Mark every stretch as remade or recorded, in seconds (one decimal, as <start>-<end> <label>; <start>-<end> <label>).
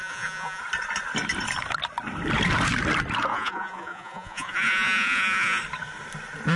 0.0-0.6 remade; 0.6-3.3 recorded; 3.3-5.6 remade; 5.6-6.6 recorded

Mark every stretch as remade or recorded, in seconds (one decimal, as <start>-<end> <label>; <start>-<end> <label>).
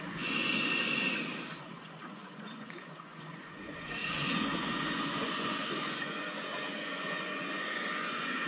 0.0-0.9 remade; 0.9-1.7 recorded; 1.7-8.5 remade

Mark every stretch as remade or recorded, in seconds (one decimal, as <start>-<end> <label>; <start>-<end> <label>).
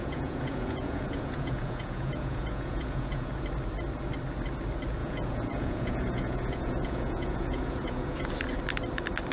0.0-3.3 remade; 3.3-5.0 recorded; 5.0-8.3 remade; 8.3-9.3 recorded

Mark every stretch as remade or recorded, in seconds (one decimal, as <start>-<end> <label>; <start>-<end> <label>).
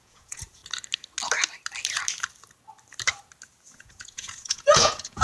0.0-0.6 remade; 0.6-3.7 recorded; 3.7-5.2 remade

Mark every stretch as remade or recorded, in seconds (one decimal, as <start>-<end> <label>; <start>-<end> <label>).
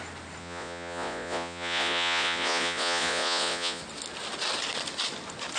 0.0-0.4 recorded; 0.4-3.8 remade; 3.8-5.6 recorded